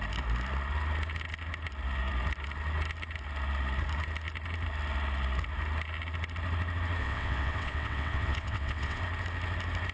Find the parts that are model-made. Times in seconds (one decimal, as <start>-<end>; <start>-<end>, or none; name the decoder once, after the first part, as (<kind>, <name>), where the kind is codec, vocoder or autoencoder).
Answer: 7.0-9.0 (vocoder, WaveNeXt)